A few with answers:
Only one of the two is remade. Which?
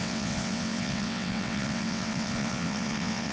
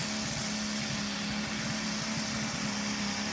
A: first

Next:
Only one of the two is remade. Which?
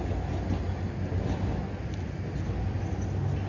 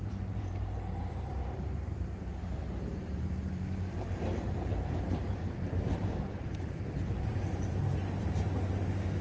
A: second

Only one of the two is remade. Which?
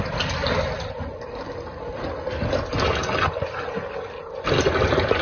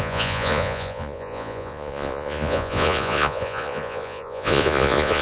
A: second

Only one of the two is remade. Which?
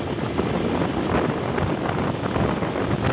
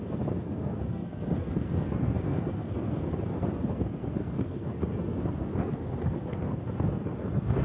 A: second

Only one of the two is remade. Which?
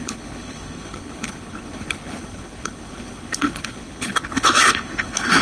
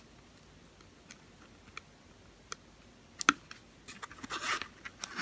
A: first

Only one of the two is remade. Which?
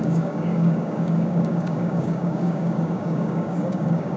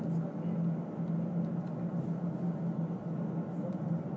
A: first